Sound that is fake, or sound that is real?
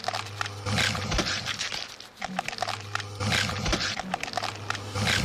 real